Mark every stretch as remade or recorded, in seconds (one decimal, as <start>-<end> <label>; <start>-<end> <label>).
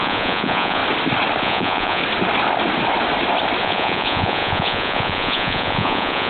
0.0-0.8 remade; 0.8-1.4 recorded; 1.4-2.0 remade; 2.0-3.6 recorded; 3.6-6.3 remade